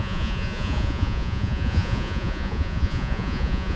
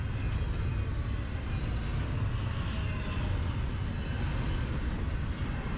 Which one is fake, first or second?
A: first